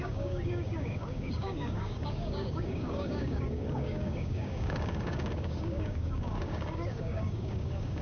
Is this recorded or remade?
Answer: remade